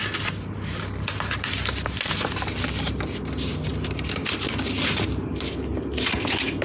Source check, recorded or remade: recorded